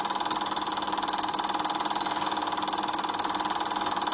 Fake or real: real